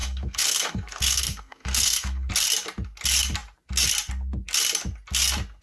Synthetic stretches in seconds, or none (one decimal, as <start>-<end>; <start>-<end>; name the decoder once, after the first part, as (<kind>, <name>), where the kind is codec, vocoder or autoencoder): 0.0-2.3 (codec, SNAC)